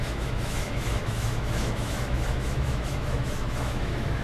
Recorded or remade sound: remade